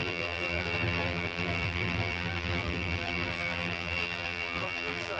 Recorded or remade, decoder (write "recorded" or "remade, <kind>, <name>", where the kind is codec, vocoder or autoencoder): remade, vocoder, BigVGAN v2